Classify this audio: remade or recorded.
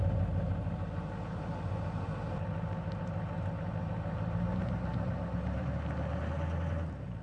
recorded